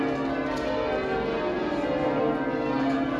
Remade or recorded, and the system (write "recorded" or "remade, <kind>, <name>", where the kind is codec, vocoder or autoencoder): recorded